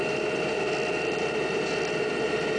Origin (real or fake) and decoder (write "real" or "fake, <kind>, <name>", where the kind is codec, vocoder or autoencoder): real